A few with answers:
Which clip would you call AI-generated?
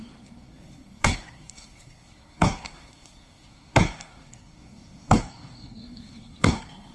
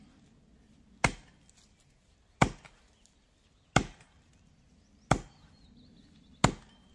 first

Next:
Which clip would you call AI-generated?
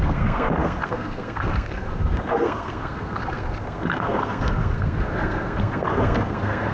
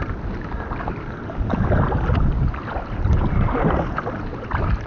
first